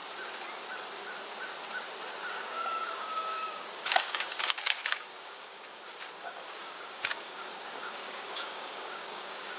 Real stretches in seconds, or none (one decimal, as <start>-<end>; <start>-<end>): 0.0-2.3